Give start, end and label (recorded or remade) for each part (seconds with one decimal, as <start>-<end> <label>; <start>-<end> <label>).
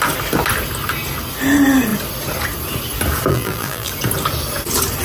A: 0.0-3.3 recorded; 3.3-3.9 remade; 3.9-5.0 recorded